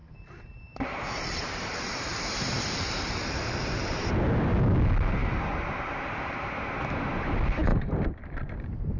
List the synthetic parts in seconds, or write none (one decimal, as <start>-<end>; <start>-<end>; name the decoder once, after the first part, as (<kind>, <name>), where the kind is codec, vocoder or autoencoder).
0.0-4.1 (vocoder, BigVGAN v2); 5.2-6.5; 7.7-9.0